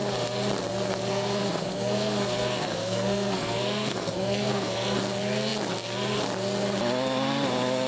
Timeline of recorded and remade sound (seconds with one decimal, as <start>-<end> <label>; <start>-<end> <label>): 0.0-1.1 recorded; 1.1-5.0 remade; 5.0-7.9 recorded